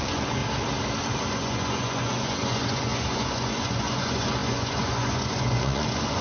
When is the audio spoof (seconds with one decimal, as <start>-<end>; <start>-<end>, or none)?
0.0-0.4; 1.3-6.2